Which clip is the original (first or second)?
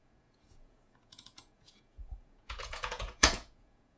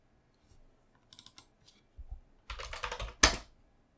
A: second